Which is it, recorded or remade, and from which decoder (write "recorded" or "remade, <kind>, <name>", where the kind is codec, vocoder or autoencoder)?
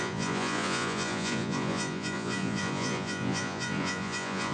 remade, vocoder, Vocos